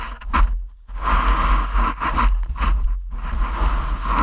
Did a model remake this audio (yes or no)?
no